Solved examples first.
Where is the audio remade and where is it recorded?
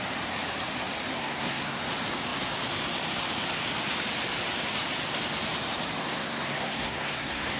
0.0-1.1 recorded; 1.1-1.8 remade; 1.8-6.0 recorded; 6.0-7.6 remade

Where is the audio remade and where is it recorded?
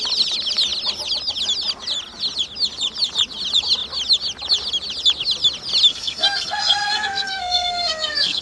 0.0-5.9 recorded; 5.9-8.4 remade